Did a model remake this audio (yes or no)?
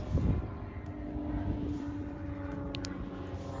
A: no